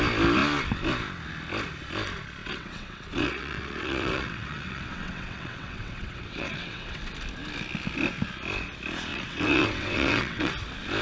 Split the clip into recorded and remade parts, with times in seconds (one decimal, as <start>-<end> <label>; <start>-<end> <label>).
0.0-2.4 recorded; 2.4-7.0 remade; 7.0-9.1 recorded; 9.1-10.5 remade; 10.5-11.0 recorded